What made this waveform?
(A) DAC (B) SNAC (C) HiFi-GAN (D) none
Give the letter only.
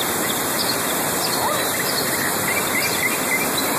D